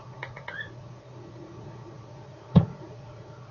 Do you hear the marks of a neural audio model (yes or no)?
yes